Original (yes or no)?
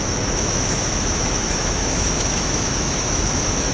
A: no